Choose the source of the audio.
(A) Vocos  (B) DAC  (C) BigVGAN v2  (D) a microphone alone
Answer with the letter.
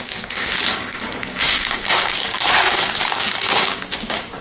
B